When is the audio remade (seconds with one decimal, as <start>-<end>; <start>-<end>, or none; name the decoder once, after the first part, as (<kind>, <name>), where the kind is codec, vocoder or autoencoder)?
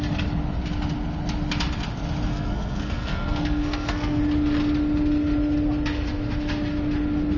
2.3-4.2 (codec, SNAC)